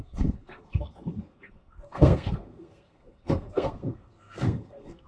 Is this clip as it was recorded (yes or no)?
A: no